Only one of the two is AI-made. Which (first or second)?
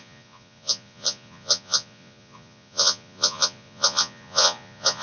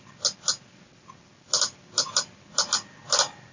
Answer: first